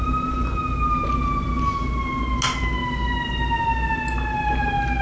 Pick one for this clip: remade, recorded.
recorded